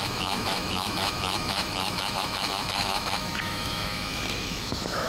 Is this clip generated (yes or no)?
yes